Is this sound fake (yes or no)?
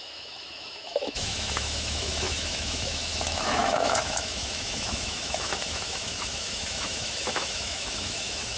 yes